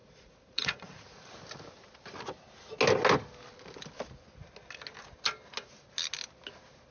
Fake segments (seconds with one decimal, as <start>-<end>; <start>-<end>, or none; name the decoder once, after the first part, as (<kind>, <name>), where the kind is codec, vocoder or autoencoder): 0.0-1.3 (vocoder, Vocos)